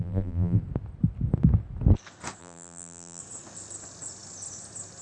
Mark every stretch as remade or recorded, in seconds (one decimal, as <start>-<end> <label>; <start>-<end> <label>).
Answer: 0.0-0.6 remade; 0.6-2.4 recorded; 2.4-3.2 remade; 3.2-5.0 recorded

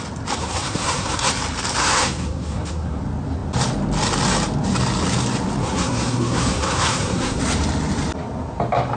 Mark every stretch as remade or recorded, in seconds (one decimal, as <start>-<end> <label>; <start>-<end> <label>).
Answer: 0.0-0.4 recorded; 0.4-1.3 remade; 1.3-1.8 recorded; 1.8-3.0 remade; 3.0-5.6 recorded; 5.6-7.4 remade; 7.4-9.0 recorded